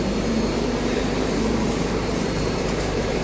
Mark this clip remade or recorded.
remade